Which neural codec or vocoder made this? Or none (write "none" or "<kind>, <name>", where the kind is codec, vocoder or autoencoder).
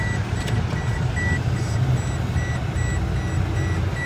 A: none